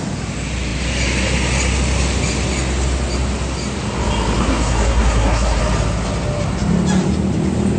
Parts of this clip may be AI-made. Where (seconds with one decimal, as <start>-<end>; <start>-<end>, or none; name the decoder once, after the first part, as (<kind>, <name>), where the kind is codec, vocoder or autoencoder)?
4.4-5.6 (codec, SNAC)